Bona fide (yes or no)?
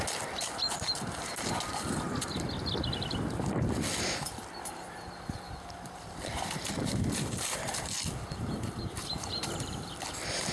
no